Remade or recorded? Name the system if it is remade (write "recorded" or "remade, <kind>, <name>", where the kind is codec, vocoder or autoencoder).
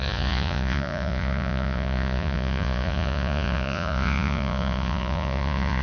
remade, vocoder, Vocos